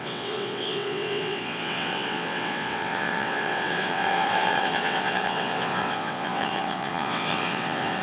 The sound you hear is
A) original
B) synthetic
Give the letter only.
B